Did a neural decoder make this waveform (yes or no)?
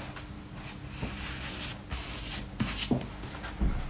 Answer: no